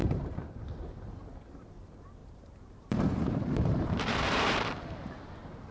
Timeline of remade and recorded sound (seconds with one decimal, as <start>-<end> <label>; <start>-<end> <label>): 0.0-0.7 remade; 0.7-2.2 recorded; 2.2-5.2 remade; 5.2-5.7 recorded